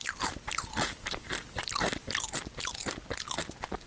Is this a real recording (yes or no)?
yes